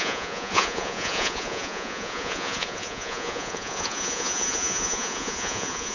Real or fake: fake